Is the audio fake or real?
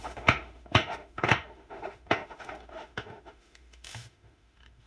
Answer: fake